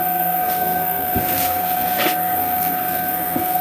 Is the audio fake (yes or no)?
yes